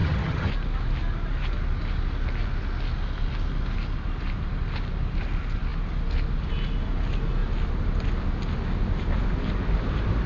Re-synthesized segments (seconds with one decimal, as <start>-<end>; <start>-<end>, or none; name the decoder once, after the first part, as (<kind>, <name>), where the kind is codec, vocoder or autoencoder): 0.0-0.5 (vocoder, HiFi-GAN)